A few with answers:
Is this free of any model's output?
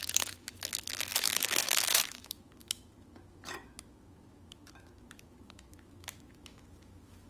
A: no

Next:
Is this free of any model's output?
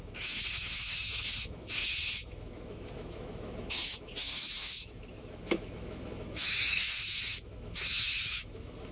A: no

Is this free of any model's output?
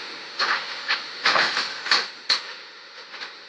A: no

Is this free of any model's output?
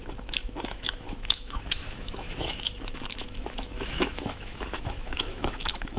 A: no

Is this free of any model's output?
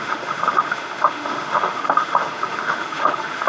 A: no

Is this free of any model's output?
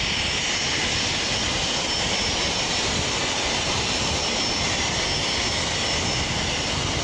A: yes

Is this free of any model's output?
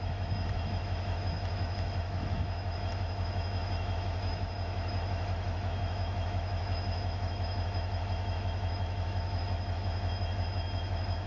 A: no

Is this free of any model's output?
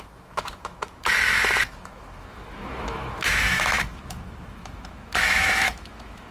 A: no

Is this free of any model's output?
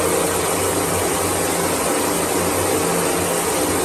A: yes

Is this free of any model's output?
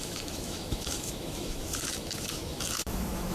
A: no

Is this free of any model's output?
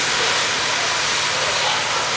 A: yes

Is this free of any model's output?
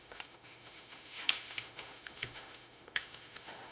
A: no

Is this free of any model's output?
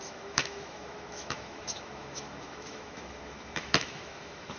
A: no